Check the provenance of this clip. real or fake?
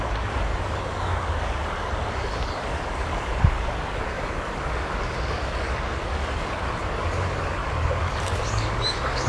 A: fake